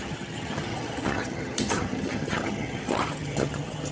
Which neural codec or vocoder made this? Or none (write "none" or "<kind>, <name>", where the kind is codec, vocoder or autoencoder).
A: vocoder, HiFi-GAN